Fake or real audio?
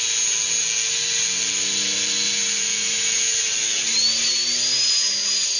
real